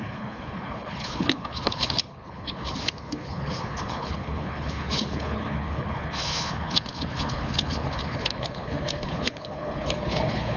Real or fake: fake